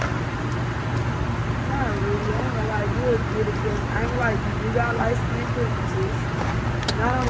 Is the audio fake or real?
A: real